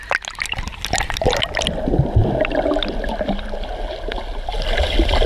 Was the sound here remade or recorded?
recorded